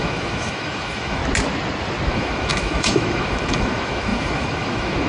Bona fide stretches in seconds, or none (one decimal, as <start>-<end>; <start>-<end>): 1.2-2.1